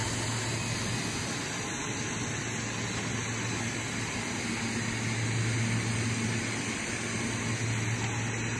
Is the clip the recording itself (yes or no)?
yes